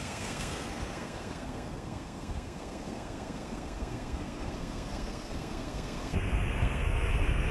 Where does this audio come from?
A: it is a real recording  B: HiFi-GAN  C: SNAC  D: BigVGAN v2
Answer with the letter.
C